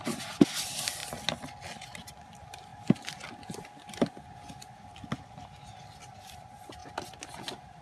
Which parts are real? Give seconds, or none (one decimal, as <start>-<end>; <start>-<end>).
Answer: 0.0-7.8